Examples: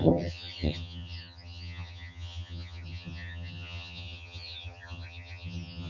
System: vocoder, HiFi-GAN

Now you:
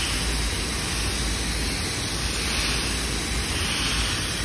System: none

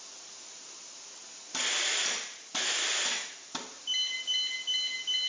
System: none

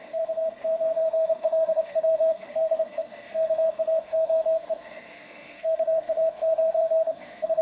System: codec, SNAC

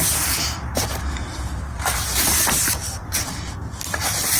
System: vocoder, BigVGAN v2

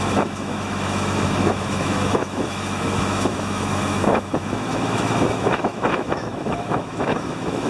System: autoencoder, DAC-VAE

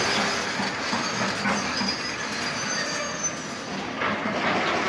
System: none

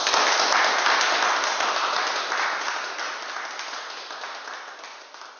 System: none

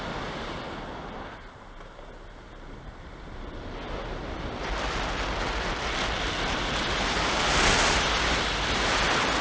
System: none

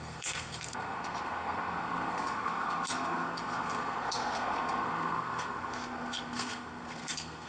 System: codec, SNAC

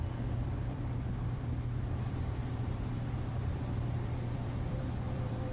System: vocoder, BigVGAN v2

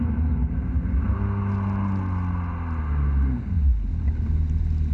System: none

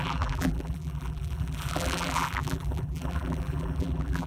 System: vocoder, BigVGAN v2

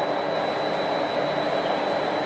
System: none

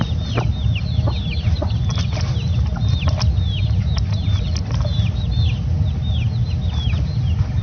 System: none